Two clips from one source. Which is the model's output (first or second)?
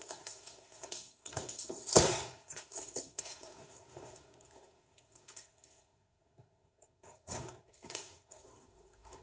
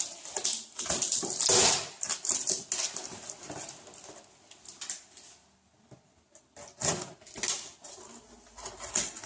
first